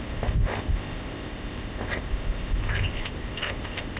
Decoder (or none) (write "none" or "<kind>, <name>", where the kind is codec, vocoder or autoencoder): codec, ZipCodec